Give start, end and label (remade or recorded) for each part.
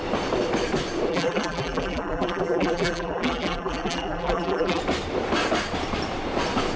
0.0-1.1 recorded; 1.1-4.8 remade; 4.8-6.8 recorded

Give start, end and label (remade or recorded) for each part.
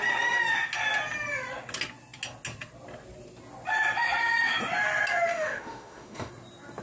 0.0-5.3 recorded; 5.3-6.3 remade; 6.3-6.8 recorded